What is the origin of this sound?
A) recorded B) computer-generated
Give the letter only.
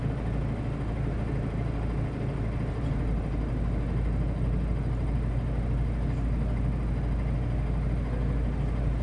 A